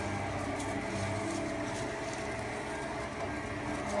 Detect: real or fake real